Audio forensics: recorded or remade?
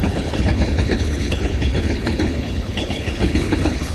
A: remade